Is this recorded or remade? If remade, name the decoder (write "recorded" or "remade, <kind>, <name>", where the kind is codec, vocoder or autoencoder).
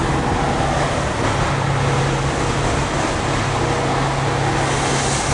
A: recorded